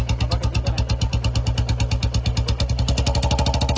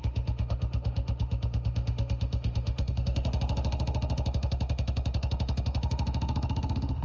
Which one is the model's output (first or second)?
second